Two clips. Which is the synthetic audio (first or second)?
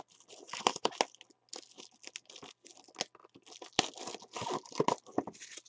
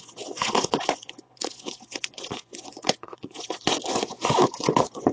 second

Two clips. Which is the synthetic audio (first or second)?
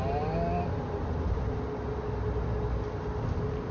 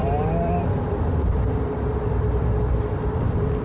second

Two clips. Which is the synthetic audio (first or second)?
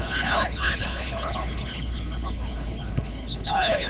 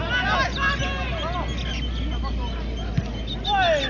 first